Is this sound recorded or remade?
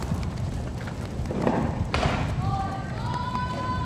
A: recorded